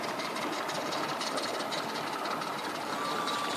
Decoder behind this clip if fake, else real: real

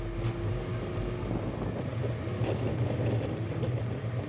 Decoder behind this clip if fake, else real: real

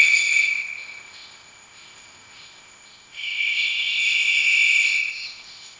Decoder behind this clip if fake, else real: fake, codec, ZipCodec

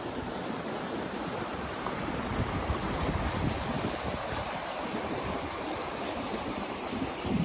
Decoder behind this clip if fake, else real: fake, vocoder, BigVGAN v2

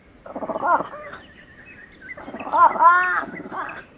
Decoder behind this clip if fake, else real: real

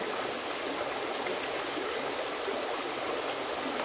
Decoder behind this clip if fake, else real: real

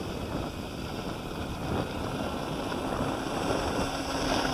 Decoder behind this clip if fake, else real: real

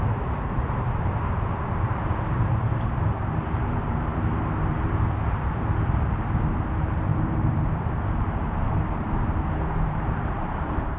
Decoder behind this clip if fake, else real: fake, vocoder, BigVGAN v2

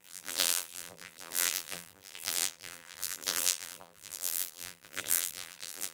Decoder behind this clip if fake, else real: fake, vocoder, BigVGAN v2